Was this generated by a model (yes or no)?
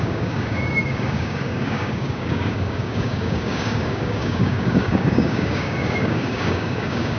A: yes